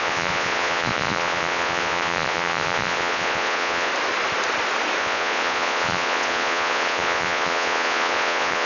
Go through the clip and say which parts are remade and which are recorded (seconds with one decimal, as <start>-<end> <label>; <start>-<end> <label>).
0.0-3.9 remade; 3.9-5.0 recorded; 5.0-8.7 remade